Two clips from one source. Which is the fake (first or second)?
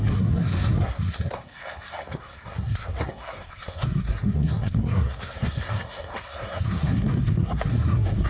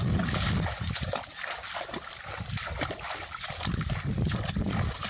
first